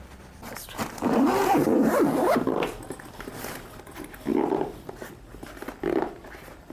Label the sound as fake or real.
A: real